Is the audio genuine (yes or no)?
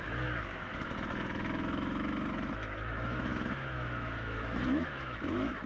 no